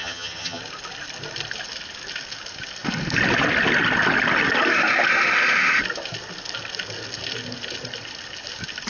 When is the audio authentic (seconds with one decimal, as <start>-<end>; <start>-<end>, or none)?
0.6-8.9